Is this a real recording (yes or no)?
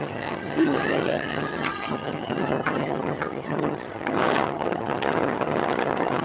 no